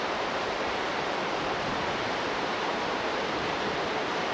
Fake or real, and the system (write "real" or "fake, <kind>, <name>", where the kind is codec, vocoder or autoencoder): fake, vocoder, BigVGAN v2